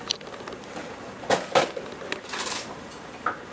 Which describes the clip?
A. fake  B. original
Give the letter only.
B